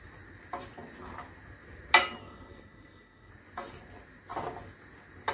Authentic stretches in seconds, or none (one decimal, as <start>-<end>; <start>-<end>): 0.0-2.2; 3.3-5.3